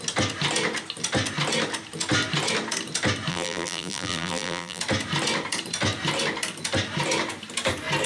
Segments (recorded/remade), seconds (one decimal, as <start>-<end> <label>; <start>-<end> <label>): 0.0-3.3 recorded; 3.3-4.8 remade; 4.8-8.1 recorded